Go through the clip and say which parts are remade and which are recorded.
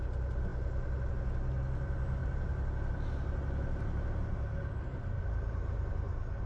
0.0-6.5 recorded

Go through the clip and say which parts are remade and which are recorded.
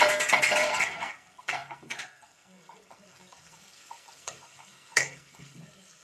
0.0-6.0 remade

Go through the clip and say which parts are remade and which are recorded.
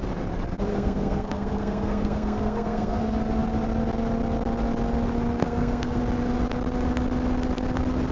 0.0-0.7 recorded; 0.7-3.0 remade; 3.0-5.4 recorded; 5.4-6.0 remade; 6.0-8.1 recorded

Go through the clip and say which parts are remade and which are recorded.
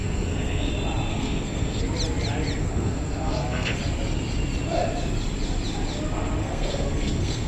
0.0-0.7 remade; 0.7-1.1 recorded; 1.1-1.8 remade; 1.8-2.6 recorded; 2.6-3.8 remade; 3.8-6.4 recorded; 6.4-7.5 remade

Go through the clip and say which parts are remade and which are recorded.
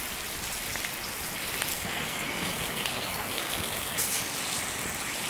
0.0-1.7 recorded; 1.7-4.2 remade; 4.2-5.3 recorded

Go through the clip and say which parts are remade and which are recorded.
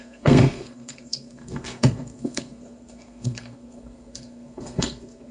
0.0-5.3 remade